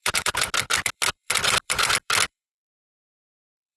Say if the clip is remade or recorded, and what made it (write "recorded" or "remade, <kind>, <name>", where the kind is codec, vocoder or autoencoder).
remade, vocoder, BigVGAN v2